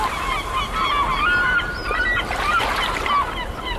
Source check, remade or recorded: recorded